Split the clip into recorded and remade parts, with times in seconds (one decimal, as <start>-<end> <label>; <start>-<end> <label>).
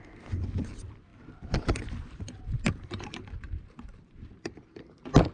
0.0-1.1 recorded; 1.1-4.3 remade; 4.3-5.3 recorded